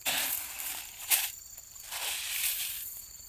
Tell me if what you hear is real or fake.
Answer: fake